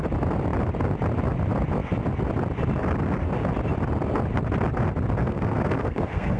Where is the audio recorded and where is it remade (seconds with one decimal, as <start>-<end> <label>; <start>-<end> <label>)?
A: 0.0-5.2 recorded; 5.2-6.4 remade